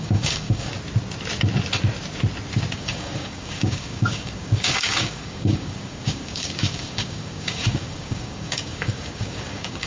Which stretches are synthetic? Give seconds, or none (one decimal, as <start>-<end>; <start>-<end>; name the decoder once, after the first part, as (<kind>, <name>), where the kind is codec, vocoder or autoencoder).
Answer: 0.0-0.7 (codec, DAC); 2.7-9.9